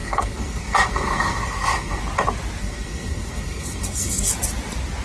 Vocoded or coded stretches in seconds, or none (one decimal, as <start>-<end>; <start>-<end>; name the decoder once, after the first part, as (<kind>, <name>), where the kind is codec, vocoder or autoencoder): 0.0-2.0 (codec, SNAC); 2.6-4.3